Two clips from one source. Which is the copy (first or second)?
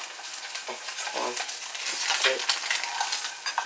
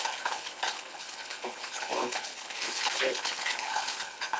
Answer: second